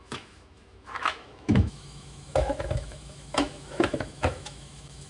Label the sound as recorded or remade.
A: remade